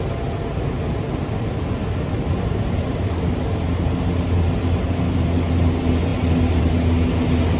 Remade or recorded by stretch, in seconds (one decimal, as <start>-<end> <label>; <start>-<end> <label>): 0.0-7.6 recorded